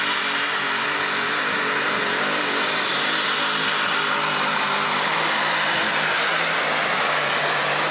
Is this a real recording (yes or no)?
yes